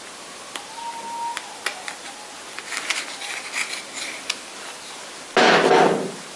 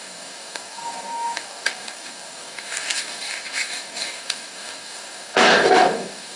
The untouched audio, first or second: first